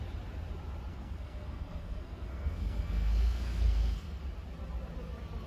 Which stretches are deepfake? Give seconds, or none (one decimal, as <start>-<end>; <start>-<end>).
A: 0.9-4.2